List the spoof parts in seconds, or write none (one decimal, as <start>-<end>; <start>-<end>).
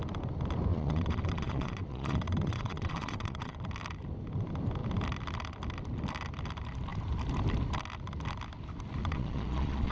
0.7-3.6; 9.0-9.9